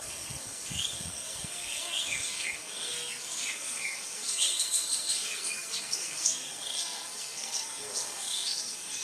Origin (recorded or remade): remade